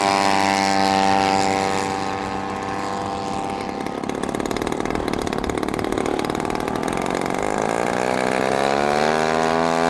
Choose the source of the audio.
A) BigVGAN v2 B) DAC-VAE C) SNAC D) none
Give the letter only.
D